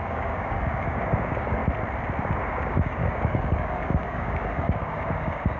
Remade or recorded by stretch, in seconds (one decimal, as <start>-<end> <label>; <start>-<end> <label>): 0.0-1.6 remade; 1.6-2.2 recorded; 2.2-5.6 remade